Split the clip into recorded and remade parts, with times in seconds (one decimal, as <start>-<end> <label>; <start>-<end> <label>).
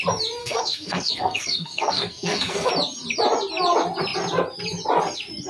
0.0-0.4 recorded; 0.4-2.7 remade; 2.7-5.5 recorded